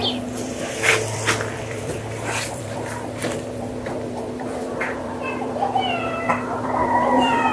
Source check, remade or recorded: remade